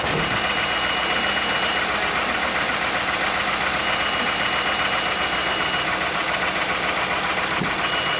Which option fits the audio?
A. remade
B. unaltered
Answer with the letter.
B